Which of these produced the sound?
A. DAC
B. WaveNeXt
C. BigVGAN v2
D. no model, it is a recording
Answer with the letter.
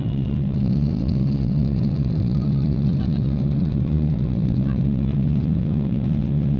B